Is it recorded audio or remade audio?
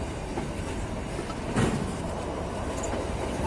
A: recorded